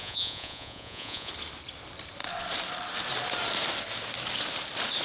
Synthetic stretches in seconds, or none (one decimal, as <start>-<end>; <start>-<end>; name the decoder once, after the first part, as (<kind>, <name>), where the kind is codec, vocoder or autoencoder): 0.0-1.3 (vocoder, Vocos)